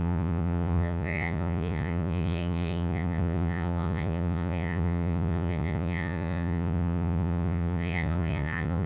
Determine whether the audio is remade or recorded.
remade